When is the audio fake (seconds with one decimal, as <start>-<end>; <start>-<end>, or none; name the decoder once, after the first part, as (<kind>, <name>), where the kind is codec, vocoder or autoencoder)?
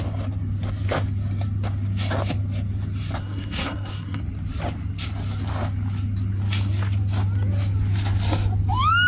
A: 3.2-4.2 (codec, SNAC)